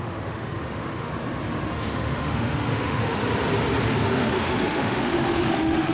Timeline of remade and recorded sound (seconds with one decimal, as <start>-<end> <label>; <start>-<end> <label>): 0.0-1.1 remade; 1.1-1.7 recorded; 1.7-3.2 remade; 3.2-3.8 recorded; 3.8-5.9 remade